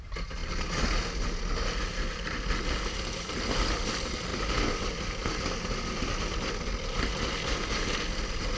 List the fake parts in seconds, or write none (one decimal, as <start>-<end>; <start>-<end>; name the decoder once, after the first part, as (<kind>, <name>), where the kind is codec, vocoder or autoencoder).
none